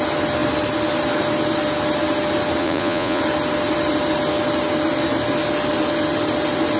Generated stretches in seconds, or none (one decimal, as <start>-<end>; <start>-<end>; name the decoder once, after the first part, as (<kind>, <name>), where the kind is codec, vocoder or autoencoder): 2.6-3.2 (vocoder, Vocos)